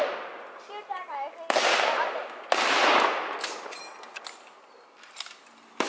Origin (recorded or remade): recorded